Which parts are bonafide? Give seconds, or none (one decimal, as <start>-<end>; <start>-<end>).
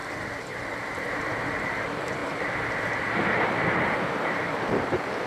0.0-0.6